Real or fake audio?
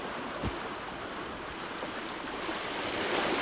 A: real